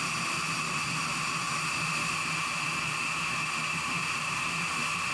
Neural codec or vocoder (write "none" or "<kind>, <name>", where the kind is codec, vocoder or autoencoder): none